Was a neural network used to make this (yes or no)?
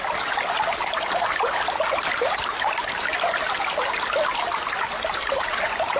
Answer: no